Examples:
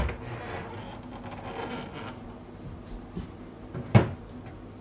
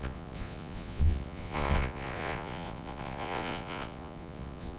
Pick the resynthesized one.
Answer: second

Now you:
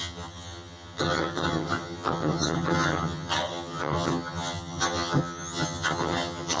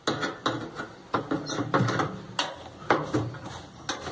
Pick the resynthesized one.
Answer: first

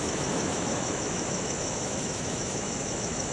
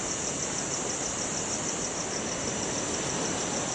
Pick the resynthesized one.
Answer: first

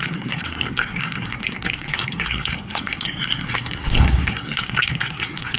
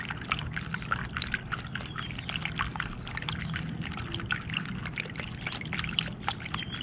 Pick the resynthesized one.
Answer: first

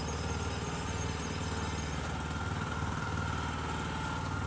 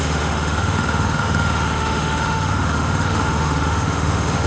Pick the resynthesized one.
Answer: second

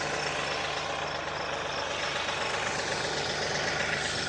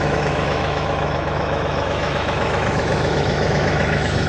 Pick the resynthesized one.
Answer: second